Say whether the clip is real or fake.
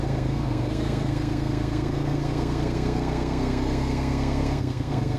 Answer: fake